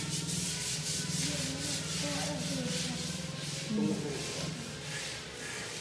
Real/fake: real